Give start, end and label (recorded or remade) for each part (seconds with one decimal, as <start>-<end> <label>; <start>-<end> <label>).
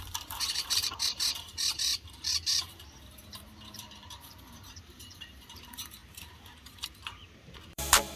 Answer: 0.0-8.2 remade